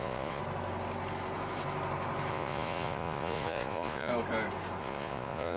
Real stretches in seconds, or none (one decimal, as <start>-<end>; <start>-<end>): 0.4-2.3; 4.1-4.8